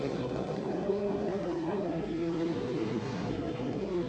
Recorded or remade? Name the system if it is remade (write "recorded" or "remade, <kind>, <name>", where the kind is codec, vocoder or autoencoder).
remade, codec, SNAC